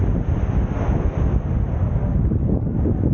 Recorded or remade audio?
recorded